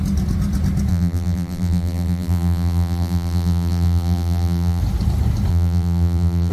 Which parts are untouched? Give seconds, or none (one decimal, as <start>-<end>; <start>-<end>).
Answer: 0.0-0.9; 4.8-5.5